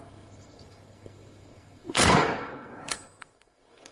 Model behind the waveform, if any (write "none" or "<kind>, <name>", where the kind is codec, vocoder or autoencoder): codec, SNAC